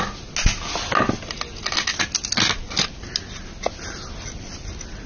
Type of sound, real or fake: real